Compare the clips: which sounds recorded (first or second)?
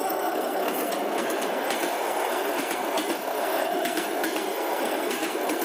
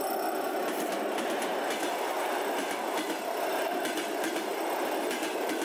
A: second